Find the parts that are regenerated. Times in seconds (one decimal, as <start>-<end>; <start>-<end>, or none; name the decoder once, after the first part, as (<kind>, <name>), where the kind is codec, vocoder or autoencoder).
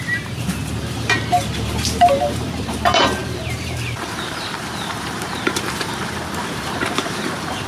0.0-7.7 (vocoder, BigVGAN v2)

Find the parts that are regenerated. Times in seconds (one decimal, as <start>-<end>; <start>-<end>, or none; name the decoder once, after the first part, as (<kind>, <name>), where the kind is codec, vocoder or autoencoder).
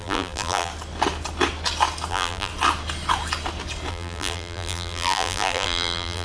0.0-0.7 (vocoder, BigVGAN v2); 2.1-2.5; 3.9-6.2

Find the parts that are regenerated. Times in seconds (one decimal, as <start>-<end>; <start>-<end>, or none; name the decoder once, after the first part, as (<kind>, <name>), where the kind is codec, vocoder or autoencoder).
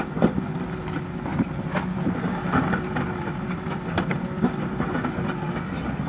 none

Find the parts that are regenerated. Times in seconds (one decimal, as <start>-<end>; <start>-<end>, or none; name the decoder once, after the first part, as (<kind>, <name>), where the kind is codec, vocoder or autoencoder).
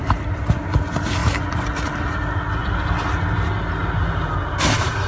0.0-0.6 (vocoder, BigVGAN v2); 1.2-1.9; 2.6-3.2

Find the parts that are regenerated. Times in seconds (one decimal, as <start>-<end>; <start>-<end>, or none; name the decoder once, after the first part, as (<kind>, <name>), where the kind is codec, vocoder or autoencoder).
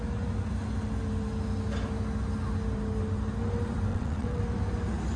3.9-4.4 (vocoder, WaveNeXt)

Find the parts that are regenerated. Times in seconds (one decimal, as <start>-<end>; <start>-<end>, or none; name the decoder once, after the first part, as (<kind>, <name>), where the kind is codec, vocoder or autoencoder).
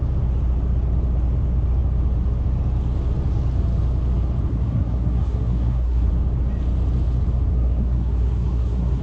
4.5-6.1 (codec, SNAC); 7.5-9.0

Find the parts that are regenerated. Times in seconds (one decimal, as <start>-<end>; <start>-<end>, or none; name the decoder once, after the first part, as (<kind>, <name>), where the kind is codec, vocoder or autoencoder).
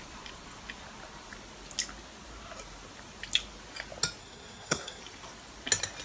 4.2-5.0 (codec, SNAC)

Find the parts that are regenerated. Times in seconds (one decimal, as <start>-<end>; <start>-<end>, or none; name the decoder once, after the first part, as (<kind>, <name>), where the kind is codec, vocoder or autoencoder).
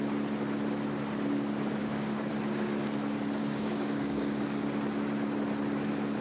1.8-2.3 (codec, DAC); 3.4-4.4